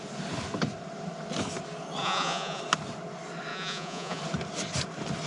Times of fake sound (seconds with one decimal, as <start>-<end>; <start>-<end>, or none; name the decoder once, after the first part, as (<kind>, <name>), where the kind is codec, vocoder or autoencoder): 2.0-2.6 (vocoder, Vocos); 3.5-4.2